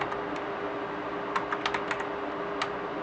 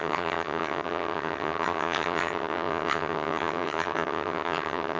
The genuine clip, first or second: first